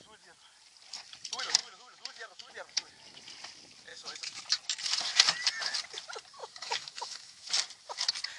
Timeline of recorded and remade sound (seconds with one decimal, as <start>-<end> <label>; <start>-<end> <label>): 0.0-1.6 recorded; 1.6-2.5 remade; 2.5-3.9 recorded; 3.9-4.4 remade; 4.4-6.4 recorded; 6.4-7.5 remade; 7.5-8.4 recorded

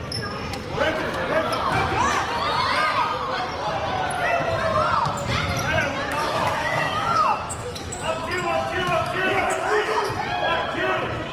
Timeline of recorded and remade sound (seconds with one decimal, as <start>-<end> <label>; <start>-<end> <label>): 0.0-6.2 recorded; 6.2-10.1 remade; 10.1-11.3 recorded